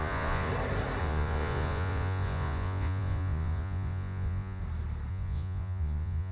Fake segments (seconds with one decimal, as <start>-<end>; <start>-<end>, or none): 0.0-0.5; 1.0-4.6; 5.1-6.3